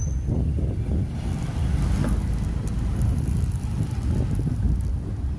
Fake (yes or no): no